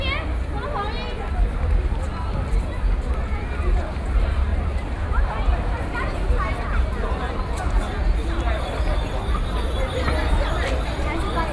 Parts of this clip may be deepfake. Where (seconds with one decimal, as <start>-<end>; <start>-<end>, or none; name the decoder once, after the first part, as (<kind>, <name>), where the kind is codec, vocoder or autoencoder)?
4.5-5.3 (vocoder, BigVGAN v2)

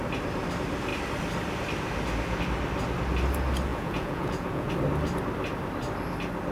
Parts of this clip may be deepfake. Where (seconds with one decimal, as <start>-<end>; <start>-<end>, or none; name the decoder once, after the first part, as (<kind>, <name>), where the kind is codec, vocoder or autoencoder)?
3.7-4.7 (vocoder, Vocos)

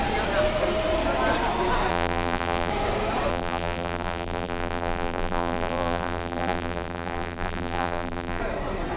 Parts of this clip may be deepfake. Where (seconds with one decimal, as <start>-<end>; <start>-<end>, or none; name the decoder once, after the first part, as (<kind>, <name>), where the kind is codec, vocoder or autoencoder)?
1.9-2.7 (vocoder, BigVGAN v2); 3.3-8.4

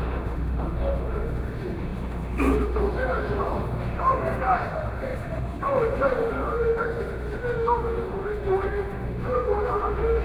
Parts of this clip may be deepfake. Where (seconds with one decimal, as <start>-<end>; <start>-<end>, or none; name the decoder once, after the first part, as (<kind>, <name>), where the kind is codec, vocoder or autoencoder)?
0.0-10.2 (autoencoder, DAC-VAE)

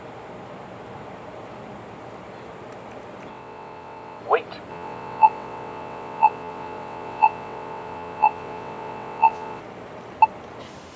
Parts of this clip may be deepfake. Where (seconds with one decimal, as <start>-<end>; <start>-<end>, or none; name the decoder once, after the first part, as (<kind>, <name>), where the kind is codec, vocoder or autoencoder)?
3.3-4.2 (vocoder, WaveNeXt); 4.7-9.6